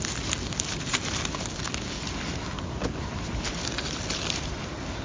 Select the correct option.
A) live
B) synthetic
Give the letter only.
A